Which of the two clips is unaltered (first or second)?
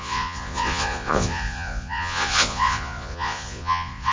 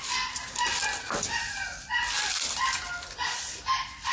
second